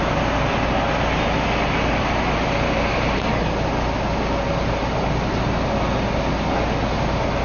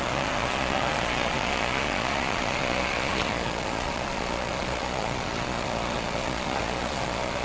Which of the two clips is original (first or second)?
first